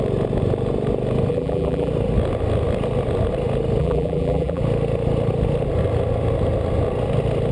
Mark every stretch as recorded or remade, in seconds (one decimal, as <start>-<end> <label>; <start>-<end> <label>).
0.0-1.3 recorded; 1.3-1.9 remade; 1.9-3.8 recorded; 3.8-4.6 remade; 4.6-7.5 recorded